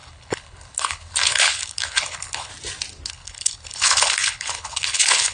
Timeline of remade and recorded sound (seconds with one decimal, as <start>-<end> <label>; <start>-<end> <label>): 0.0-2.5 remade; 2.5-3.1 recorded; 3.1-5.3 remade